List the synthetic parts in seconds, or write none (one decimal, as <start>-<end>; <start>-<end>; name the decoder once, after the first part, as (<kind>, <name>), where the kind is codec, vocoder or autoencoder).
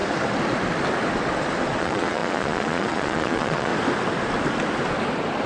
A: 1.8-3.7 (vocoder, Vocos)